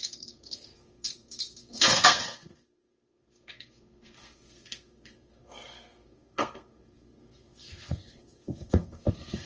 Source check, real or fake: fake